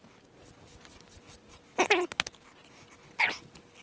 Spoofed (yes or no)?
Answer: no